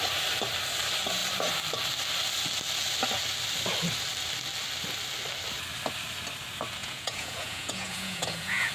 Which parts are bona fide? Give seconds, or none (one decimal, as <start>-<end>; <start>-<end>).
0.0-6.8